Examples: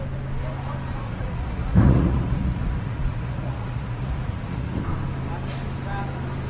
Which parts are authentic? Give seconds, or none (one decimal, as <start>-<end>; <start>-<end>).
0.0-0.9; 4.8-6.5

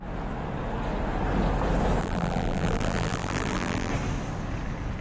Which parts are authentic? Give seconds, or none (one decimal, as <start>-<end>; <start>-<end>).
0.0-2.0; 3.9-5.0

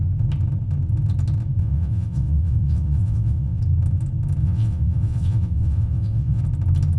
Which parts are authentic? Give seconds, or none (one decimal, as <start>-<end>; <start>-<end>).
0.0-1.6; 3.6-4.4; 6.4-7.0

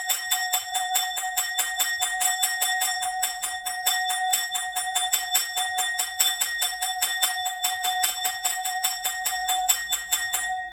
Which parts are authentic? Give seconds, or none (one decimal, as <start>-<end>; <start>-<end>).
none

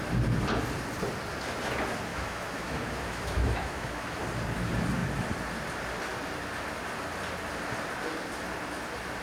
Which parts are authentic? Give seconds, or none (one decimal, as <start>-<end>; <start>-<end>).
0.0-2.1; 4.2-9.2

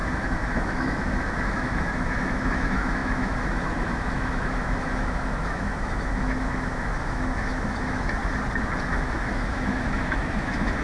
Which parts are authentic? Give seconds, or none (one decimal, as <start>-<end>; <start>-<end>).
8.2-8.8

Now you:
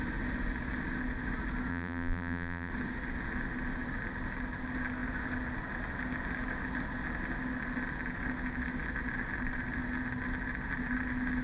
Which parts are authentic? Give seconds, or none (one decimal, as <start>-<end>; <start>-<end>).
0.0-1.7; 2.7-11.4